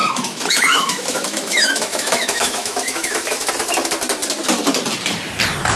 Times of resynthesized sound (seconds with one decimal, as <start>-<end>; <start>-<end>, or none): 0.0-3.5